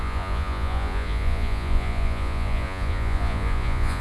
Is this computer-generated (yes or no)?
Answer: yes